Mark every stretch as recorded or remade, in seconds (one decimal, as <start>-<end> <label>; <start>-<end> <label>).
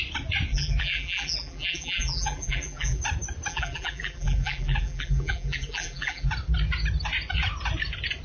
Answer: 0.0-0.5 recorded; 0.5-3.0 remade; 3.0-3.5 recorded; 3.5-6.3 remade; 6.3-8.2 recorded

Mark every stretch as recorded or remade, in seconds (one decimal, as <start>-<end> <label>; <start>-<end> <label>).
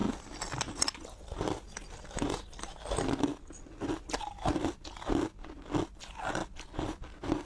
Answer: 0.0-7.5 recorded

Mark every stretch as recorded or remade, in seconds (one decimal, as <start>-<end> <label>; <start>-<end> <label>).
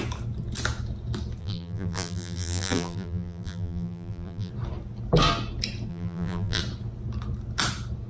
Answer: 0.0-1.4 recorded; 1.4-4.5 remade; 4.5-5.9 recorded; 5.9-6.6 remade; 6.6-8.1 recorded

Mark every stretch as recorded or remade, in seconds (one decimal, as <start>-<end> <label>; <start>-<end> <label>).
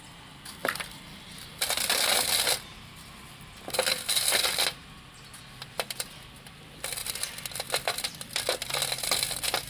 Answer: 0.0-0.6 recorded; 0.6-2.2 remade; 2.2-7.0 recorded; 7.0-9.0 remade; 9.0-9.7 recorded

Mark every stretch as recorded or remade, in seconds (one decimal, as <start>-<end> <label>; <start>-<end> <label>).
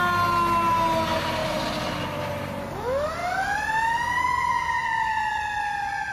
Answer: 0.0-1.4 recorded; 1.4-2.4 remade; 2.4-3.2 recorded; 3.2-4.2 remade; 4.2-4.8 recorded; 4.8-6.1 remade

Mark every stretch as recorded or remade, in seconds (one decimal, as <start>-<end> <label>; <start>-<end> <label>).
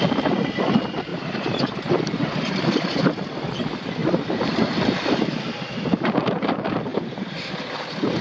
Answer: 0.0-1.1 recorded; 1.1-2.8 remade; 2.8-6.9 recorded; 6.9-7.5 remade; 7.5-8.2 recorded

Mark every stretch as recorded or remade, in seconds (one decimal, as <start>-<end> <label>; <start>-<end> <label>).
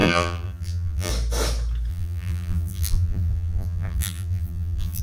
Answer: 0.0-1.1 remade; 1.1-1.9 recorded; 1.9-5.0 remade